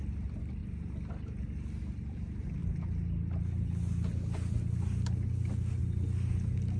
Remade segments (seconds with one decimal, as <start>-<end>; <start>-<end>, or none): none